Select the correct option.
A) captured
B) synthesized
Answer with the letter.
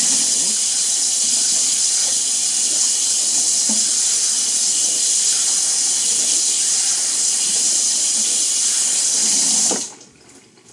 A